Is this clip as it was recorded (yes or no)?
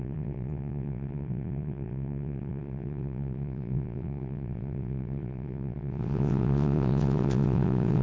no